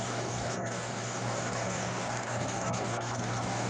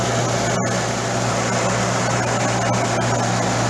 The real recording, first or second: second